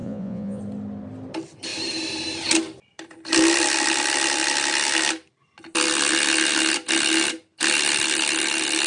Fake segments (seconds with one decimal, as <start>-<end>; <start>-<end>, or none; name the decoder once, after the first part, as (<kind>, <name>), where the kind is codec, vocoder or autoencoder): 0.0-0.6 (vocoder, Vocos)